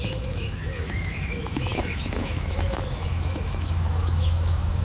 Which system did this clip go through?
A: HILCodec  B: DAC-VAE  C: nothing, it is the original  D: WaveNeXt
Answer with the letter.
B